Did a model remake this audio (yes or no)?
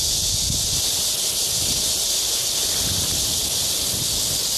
no